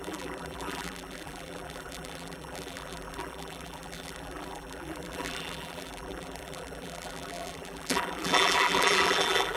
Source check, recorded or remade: remade